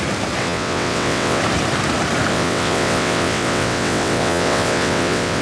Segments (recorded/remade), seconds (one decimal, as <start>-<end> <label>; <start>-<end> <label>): 0.0-0.4 recorded; 0.4-1.4 remade; 1.4-2.3 recorded; 2.3-5.4 remade